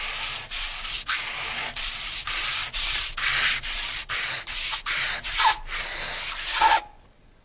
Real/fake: real